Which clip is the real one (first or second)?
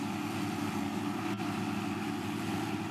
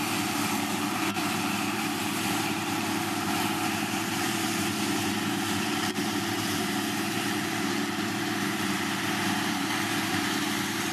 first